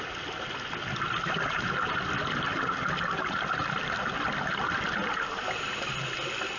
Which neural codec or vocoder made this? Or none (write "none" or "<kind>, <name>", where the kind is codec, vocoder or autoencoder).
none